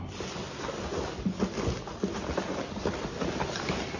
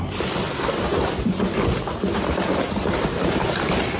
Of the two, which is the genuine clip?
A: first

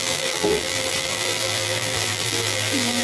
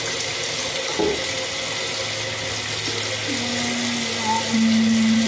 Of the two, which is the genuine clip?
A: second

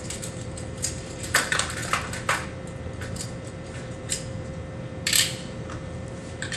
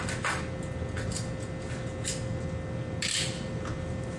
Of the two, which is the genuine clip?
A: second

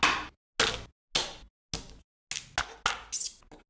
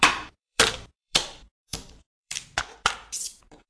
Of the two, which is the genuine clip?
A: first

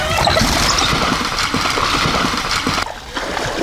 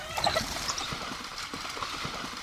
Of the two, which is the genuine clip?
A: first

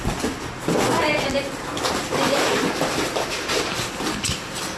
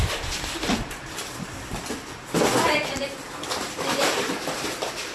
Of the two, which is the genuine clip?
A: first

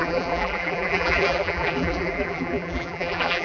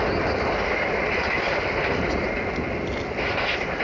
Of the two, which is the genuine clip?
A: second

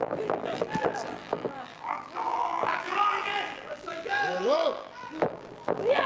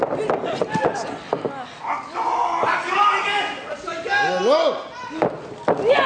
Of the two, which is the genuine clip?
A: second